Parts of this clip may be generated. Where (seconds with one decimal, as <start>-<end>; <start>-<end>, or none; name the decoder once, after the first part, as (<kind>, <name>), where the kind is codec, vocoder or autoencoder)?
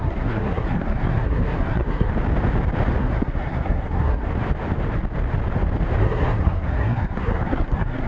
0.0-2.1 (codec, SNAC); 3.0-4.3; 6.0-8.1